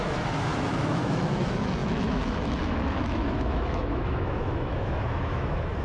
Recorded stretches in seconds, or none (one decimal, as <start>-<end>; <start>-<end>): none

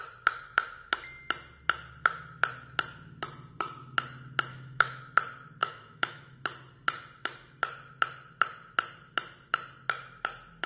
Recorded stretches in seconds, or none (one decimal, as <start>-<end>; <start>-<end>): 0.0-4.5; 5.0-5.6; 6.4-10.7

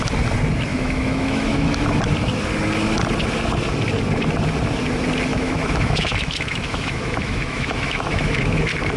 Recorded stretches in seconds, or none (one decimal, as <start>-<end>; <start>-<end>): 0.0-0.7; 1.8-5.3; 8.6-9.0

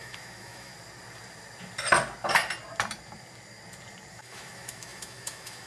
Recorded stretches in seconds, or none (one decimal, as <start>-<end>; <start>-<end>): 0.7-4.1

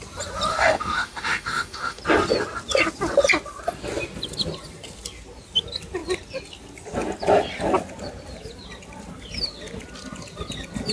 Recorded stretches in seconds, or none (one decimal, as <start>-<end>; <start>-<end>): 0.0-0.5; 2.0-10.9

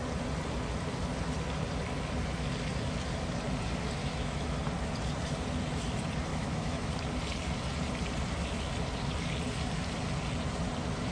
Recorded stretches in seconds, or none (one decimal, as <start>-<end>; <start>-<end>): 0.0-4.0; 4.6-6.3; 7.0-11.1